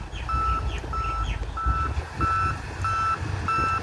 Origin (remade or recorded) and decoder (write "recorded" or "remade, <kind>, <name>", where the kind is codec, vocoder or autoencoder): recorded